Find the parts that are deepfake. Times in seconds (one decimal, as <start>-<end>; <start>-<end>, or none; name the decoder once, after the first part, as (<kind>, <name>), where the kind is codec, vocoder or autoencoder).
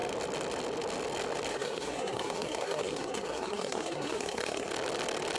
1.5-4.7 (codec, SNAC)